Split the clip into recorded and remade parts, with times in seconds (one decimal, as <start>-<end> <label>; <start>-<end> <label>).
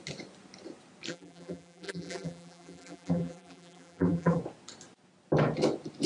0.0-1.1 recorded; 1.1-4.4 remade; 4.4-6.1 recorded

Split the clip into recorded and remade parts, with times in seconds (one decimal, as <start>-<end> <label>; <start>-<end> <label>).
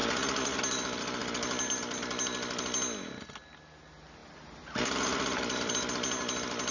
0.0-0.6 remade; 0.6-1.2 recorded; 1.2-2.6 remade; 2.6-4.2 recorded; 4.2-5.7 remade; 5.7-6.7 recorded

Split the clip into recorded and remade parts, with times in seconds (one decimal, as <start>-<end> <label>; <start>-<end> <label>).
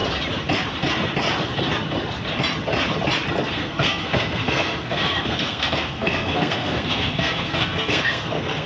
0.0-3.5 recorded; 3.5-8.7 remade